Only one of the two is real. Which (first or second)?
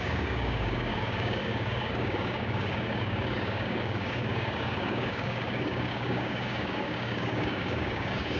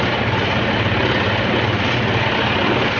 second